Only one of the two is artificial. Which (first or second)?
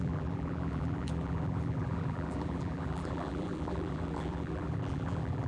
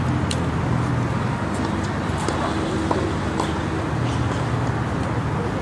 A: first